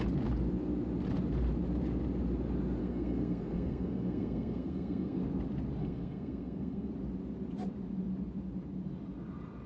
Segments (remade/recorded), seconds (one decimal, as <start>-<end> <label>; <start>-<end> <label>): 0.0-2.8 recorded; 2.8-5.2 remade; 5.2-5.8 recorded; 5.8-6.9 remade; 6.9-9.7 recorded